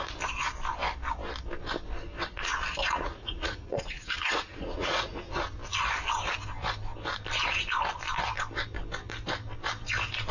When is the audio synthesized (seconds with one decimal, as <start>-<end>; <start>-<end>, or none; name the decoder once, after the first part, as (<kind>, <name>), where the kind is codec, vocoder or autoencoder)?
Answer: 2.8-5.3 (vocoder, Vocos)